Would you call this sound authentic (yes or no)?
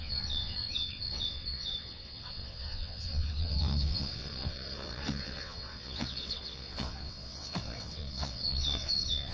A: no